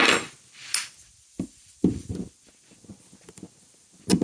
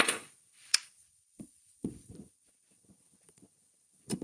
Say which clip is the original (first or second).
first